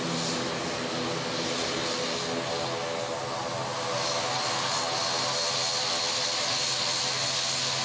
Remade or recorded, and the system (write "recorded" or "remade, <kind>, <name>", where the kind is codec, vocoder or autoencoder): recorded